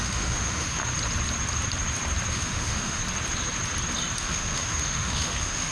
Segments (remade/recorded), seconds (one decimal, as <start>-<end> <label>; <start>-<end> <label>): 0.0-0.8 remade; 0.8-2.3 recorded; 2.3-3.0 remade; 3.0-4.2 recorded; 4.2-5.7 remade